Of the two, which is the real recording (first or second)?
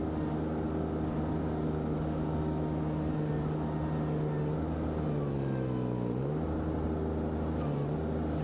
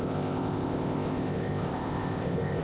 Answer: first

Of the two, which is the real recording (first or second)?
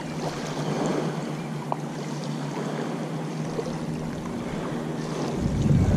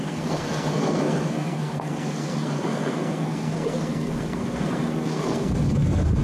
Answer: first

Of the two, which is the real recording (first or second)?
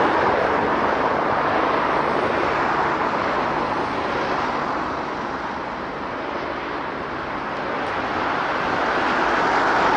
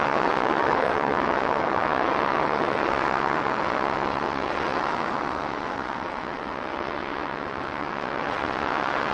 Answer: first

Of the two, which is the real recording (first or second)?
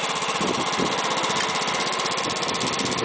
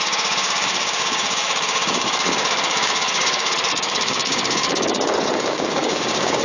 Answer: first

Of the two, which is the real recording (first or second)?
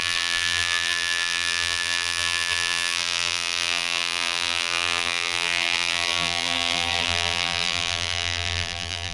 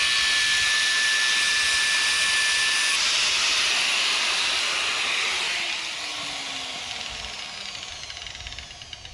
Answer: second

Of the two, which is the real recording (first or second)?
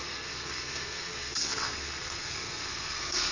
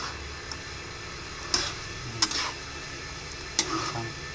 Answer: second